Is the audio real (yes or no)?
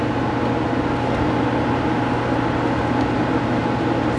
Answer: yes